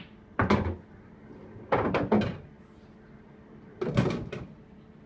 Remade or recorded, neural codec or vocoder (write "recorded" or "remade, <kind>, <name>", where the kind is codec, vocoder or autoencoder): recorded